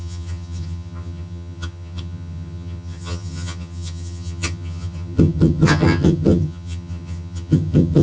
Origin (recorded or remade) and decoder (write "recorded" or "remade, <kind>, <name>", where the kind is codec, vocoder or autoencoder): remade, vocoder, HiFi-GAN